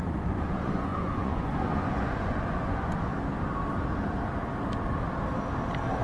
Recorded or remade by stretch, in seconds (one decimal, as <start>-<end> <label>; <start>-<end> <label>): 0.0-3.1 remade; 3.1-6.0 recorded